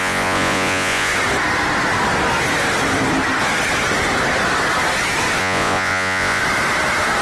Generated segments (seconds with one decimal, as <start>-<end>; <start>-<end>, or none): 0.0-1.1; 5.4-6.4